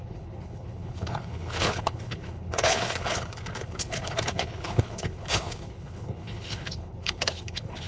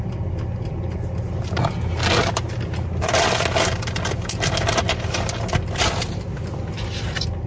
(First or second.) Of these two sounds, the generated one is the first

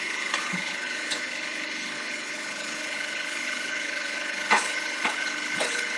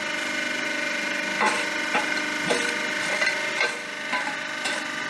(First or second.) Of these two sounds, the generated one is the first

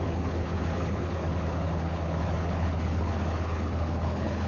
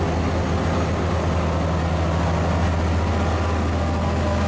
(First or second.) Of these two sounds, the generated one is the first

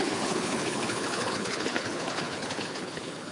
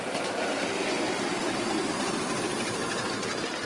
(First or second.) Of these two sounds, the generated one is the first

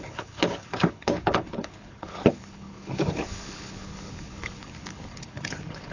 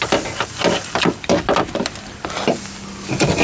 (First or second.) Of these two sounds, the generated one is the first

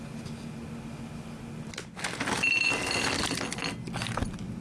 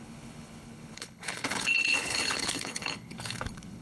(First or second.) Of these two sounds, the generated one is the second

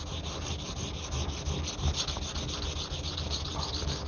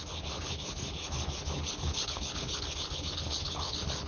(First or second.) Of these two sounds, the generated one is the second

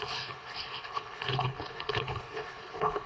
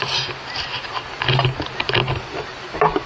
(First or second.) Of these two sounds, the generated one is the first